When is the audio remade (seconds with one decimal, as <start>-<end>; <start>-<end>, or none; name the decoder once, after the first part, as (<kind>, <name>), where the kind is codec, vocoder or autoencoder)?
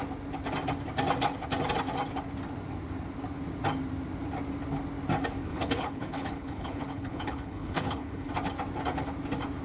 5.4-8.3 (codec, HILCodec)